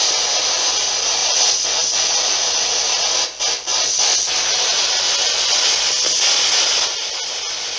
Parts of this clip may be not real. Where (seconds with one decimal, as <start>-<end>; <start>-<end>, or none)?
1.2-3.1